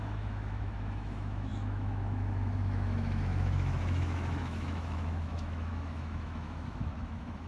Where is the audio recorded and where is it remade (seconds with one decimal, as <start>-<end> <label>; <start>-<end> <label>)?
0.0-7.5 remade